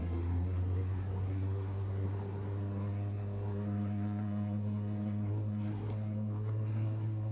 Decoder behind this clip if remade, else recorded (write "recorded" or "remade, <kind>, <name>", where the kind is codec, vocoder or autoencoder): remade, codec, SNAC